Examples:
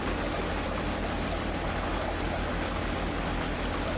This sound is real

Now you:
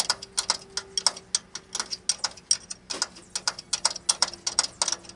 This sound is real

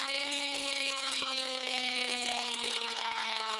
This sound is fake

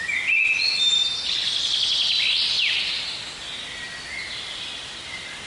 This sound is real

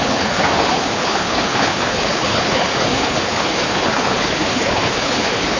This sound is fake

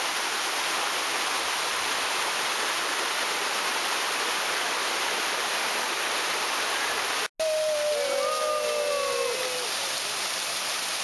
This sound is real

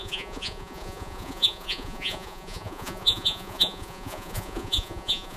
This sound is fake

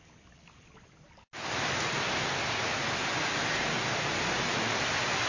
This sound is real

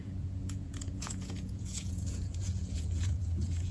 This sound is fake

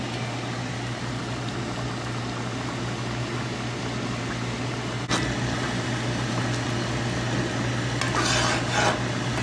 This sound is real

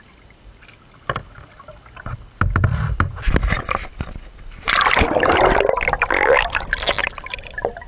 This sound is real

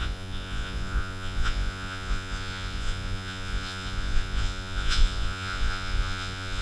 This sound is fake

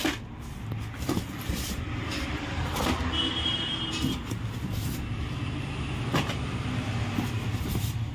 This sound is real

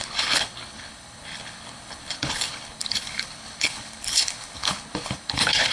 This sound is fake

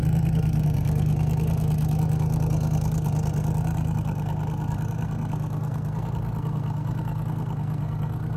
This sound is fake